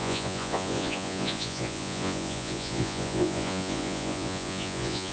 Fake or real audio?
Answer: fake